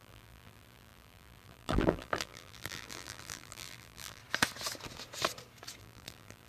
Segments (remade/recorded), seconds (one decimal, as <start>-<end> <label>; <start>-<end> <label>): 0.0-4.2 remade; 4.2-5.8 recorded; 5.8-6.5 remade

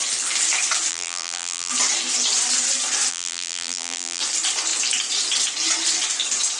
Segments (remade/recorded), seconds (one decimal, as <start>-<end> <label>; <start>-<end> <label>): 0.0-0.9 recorded; 0.9-1.7 remade; 1.7-3.1 recorded; 3.1-4.2 remade; 4.2-6.6 recorded

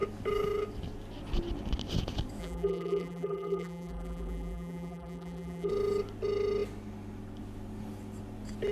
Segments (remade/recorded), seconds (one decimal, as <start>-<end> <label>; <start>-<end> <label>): 0.0-2.4 recorded; 2.4-5.7 remade; 5.7-8.7 recorded

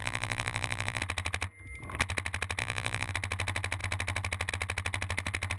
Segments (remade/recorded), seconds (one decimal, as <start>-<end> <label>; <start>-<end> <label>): 0.0-1.0 remade; 1.0-2.6 recorded; 2.6-3.1 remade; 3.1-5.6 recorded

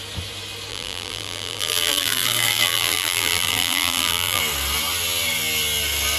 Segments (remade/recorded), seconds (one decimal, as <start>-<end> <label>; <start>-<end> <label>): 0.0-0.7 recorded; 0.7-4.4 remade; 4.4-6.2 recorded

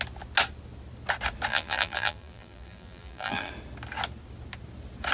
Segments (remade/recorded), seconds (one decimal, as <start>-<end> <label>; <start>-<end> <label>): 0.0-1.5 recorded; 1.5-3.5 remade; 3.5-5.1 recorded

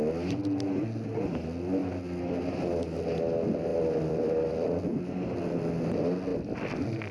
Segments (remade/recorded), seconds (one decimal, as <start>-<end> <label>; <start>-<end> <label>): 0.0-1.8 recorded; 1.8-2.5 remade; 2.5-3.7 recorded; 3.7-5.1 remade; 5.1-7.1 recorded

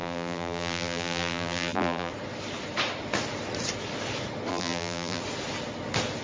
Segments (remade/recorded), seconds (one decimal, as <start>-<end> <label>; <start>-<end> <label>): 0.0-2.1 remade; 2.1-4.5 recorded; 4.5-5.2 remade; 5.2-6.2 recorded